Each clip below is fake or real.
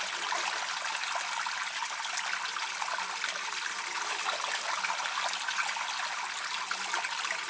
real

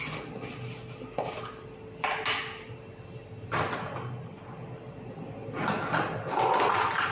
real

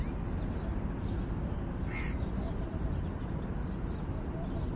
real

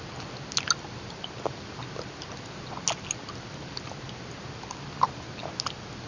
real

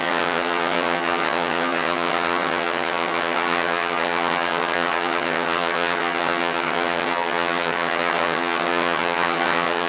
fake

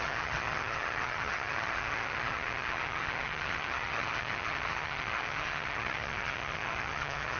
fake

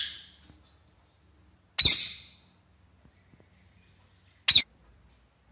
real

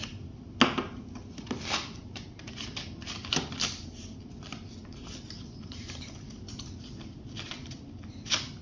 real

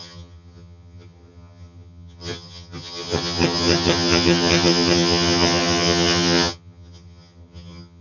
fake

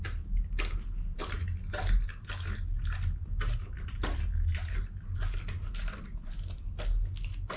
real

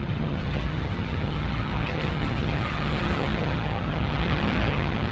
fake